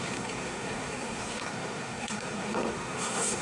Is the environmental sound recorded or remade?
remade